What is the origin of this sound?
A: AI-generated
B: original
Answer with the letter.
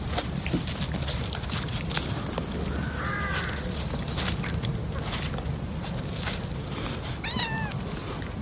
B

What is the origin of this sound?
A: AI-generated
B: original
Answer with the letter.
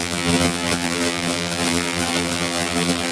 A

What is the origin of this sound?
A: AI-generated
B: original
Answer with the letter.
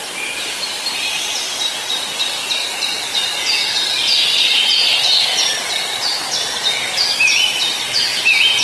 B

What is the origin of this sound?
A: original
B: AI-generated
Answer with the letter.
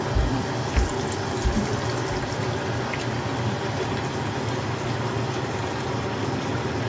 A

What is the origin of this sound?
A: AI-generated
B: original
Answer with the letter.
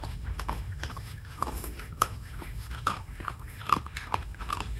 A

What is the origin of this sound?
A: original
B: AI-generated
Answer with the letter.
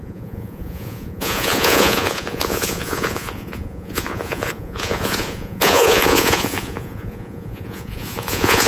B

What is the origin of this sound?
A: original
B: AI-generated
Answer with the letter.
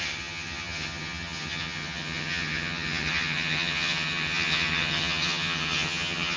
B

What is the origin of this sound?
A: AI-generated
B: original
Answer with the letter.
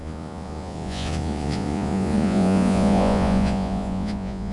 A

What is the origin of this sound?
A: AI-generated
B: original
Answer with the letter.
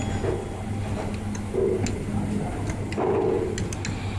B